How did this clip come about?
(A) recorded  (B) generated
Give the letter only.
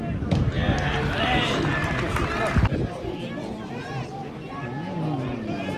A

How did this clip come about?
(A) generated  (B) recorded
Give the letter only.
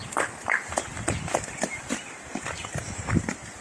B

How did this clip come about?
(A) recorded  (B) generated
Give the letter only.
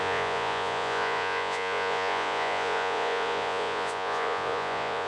B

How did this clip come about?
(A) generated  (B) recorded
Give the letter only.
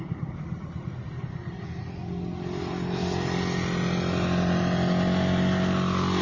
B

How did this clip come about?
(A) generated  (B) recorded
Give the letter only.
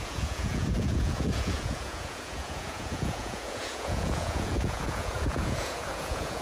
A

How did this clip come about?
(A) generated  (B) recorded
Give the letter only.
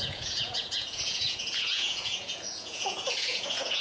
A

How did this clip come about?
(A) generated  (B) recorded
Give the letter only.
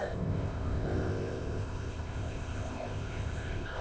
A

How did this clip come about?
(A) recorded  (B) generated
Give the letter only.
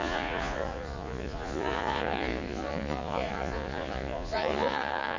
B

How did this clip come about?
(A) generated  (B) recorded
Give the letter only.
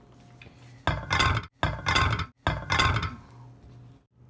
B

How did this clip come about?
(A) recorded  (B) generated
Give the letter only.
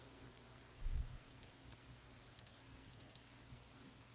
B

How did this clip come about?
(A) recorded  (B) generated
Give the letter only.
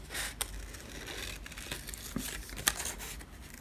A